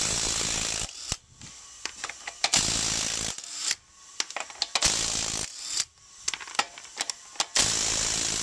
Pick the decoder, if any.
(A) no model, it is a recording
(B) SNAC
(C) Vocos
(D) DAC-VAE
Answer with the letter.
A